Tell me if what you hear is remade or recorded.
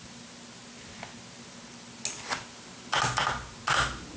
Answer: recorded